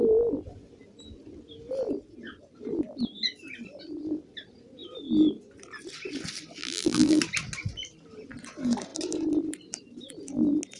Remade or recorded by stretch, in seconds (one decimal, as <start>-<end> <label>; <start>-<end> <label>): 0.0-6.6 recorded; 6.6-7.2 remade; 7.2-10.8 recorded